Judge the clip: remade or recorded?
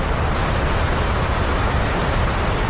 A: recorded